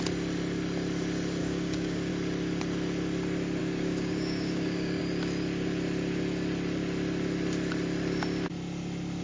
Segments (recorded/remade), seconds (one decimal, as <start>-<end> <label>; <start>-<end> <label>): 0.0-1.4 recorded; 1.4-2.1 remade; 2.1-3.6 recorded; 3.6-5.0 remade; 5.0-9.2 recorded

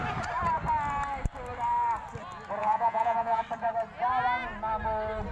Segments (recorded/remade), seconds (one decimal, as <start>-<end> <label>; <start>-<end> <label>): 0.0-2.6 recorded; 2.6-3.4 remade; 3.4-5.3 recorded

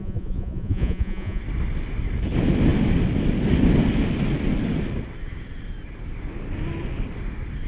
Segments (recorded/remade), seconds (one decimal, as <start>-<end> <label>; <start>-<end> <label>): 0.0-1.4 remade; 1.4-7.7 recorded

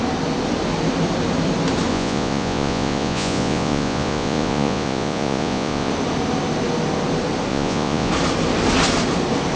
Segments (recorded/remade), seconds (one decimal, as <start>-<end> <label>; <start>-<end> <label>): 0.0-1.9 recorded; 1.9-5.9 remade; 5.9-7.5 recorded; 7.5-8.1 remade; 8.1-9.6 recorded

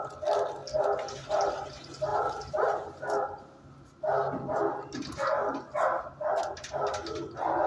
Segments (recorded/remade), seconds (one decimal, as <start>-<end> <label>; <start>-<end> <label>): 0.0-7.7 recorded

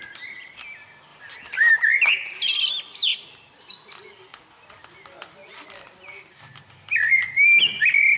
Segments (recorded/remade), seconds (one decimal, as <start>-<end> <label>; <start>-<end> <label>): 0.0-8.2 recorded

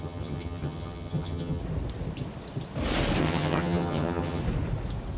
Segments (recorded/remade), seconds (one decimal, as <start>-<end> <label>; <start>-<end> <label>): 0.0-1.6 remade; 1.6-3.2 recorded; 3.2-4.4 remade; 4.4-5.2 recorded

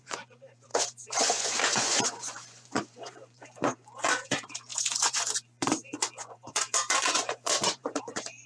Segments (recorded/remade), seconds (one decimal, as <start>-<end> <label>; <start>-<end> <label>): 0.0-8.5 remade